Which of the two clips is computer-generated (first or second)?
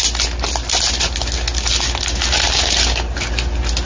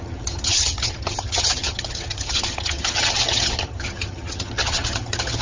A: second